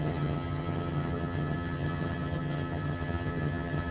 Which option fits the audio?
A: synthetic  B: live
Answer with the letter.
A